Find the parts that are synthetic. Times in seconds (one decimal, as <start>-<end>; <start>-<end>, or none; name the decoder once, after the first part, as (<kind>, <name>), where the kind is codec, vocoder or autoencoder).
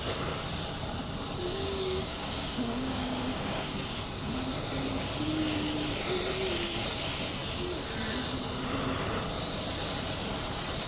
1.5-3.9 (codec, DAC)